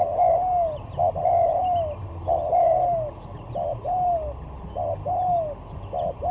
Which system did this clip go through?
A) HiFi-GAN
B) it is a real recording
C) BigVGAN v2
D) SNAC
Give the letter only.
B